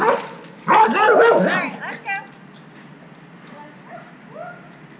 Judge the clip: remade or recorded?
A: recorded